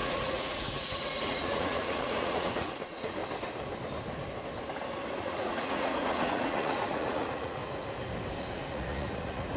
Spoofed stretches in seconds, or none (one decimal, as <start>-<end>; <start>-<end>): 0.0-3.2; 5.2-7.6; 8.4-9.6